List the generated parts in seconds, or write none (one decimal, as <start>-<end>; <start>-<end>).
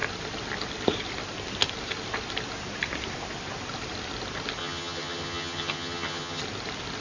4.6-6.4